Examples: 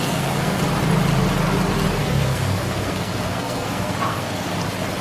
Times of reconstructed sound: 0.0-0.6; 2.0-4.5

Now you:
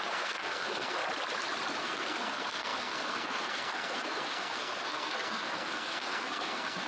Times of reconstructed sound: 0.0-1.0; 1.8-6.9

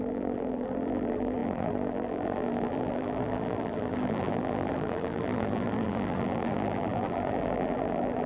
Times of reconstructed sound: 0.0-8.3

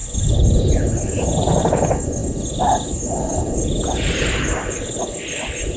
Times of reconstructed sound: 2.2-4.9

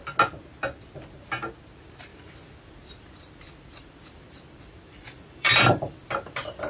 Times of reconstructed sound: 2.1-6.1

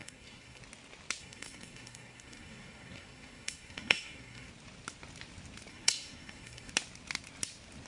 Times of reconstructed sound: 0.0-0.6; 1.2-4.5; 5.7-6.7

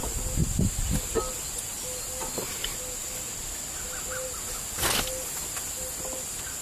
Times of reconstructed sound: none